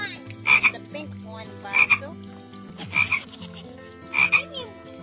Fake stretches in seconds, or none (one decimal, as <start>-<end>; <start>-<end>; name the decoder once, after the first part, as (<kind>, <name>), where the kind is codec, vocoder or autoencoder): 3.1-3.9 (codec, DAC)